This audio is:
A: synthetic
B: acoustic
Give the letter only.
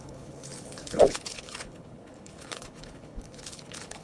A